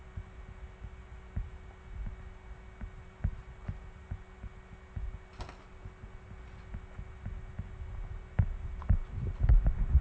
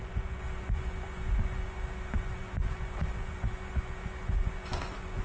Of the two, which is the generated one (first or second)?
second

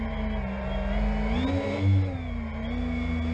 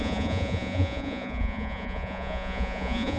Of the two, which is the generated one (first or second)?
second